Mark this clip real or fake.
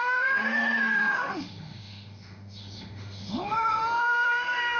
fake